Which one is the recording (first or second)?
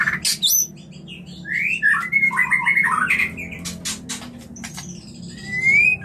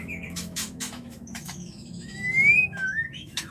first